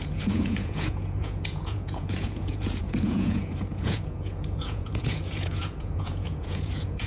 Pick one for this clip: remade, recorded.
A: remade